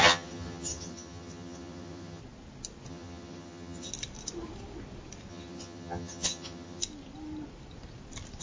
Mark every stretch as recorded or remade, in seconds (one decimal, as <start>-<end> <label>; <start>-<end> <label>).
0.0-2.2 remade; 2.2-2.9 recorded; 2.9-3.9 remade; 3.9-5.3 recorded; 5.3-6.8 remade; 6.8-8.4 recorded